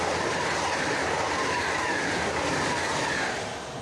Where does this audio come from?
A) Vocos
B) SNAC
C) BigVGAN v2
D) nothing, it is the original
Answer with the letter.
D